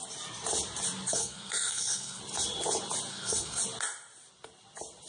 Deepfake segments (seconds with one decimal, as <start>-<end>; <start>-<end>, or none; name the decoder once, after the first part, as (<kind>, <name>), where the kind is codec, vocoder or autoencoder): 1.1-2.2 (codec, SNAC); 3.1-3.6